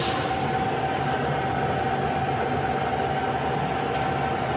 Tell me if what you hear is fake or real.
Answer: real